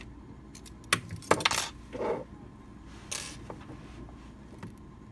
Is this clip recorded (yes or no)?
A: yes